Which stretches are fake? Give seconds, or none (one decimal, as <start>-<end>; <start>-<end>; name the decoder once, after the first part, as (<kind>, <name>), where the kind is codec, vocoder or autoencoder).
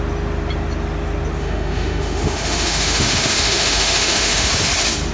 1.4-4.5 (autoencoder, DAC-VAE)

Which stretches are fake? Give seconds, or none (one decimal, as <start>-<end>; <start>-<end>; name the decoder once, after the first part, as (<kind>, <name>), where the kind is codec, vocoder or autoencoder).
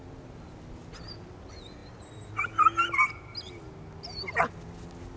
none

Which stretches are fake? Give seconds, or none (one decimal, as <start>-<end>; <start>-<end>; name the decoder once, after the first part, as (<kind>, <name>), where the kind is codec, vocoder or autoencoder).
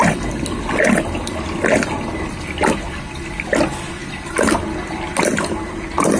4.0-4.6 (vocoder, BigVGAN v2)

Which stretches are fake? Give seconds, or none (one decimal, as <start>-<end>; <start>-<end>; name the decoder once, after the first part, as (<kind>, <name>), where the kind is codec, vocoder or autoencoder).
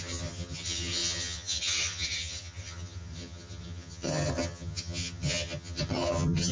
0.0-6.5 (vocoder, HiFi-GAN)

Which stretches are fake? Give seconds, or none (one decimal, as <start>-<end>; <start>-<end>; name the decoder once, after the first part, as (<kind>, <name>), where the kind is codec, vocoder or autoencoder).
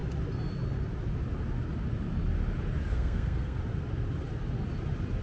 2.9-3.6 (codec, SNAC)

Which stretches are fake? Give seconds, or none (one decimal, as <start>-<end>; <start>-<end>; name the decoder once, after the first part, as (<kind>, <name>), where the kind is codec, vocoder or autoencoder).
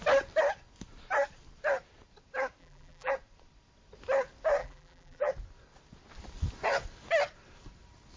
2.6-3.1 (vocoder, BigVGAN v2); 4.6-5.3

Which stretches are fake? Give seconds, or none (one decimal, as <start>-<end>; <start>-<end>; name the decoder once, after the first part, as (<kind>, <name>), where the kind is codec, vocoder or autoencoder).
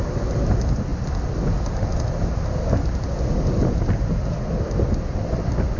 none